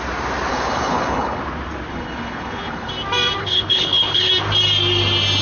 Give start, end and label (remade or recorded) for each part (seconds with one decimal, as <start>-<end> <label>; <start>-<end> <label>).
0.0-0.5 recorded; 0.5-1.4 remade; 1.4-1.9 recorded; 1.9-2.9 remade; 2.9-3.4 recorded; 3.4-4.3 remade; 4.3-5.4 recorded